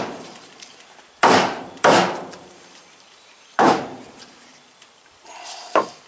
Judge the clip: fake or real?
fake